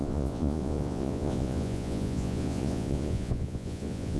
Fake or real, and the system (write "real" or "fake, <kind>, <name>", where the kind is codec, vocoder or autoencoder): fake, vocoder, Vocos